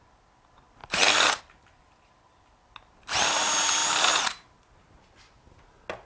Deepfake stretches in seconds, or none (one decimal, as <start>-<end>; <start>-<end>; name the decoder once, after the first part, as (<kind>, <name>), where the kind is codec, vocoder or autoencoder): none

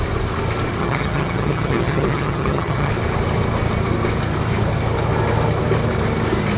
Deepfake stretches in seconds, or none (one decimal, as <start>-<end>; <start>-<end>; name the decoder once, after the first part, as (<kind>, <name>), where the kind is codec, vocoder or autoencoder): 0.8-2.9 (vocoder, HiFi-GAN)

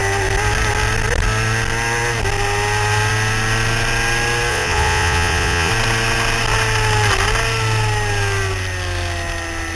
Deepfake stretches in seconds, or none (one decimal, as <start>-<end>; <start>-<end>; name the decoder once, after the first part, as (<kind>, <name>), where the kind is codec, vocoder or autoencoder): 4.5-5.7 (vocoder, Vocos)

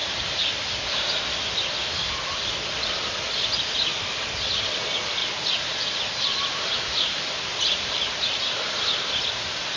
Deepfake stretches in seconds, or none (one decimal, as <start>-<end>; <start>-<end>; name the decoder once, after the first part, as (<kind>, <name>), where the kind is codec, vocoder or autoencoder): 0.0-1.2 (vocoder, BigVGAN v2); 5.2-8.4

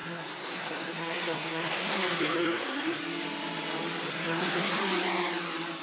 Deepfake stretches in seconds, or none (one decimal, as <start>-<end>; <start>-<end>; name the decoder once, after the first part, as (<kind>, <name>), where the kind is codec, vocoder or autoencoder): 0.0-3.0 (codec, SNAC); 4.1-4.7

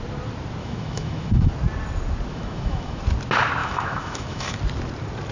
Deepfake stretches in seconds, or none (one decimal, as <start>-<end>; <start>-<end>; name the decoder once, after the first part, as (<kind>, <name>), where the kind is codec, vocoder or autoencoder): 0.6-1.5 (autoencoder, DAC-VAE); 2.3-3.0; 3.6-4.6

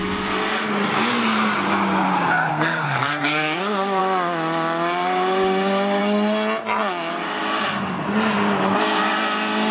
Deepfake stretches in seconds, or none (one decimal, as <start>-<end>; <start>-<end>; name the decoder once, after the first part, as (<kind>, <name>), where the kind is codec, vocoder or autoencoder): 2.5-4.0 (codec, SNAC)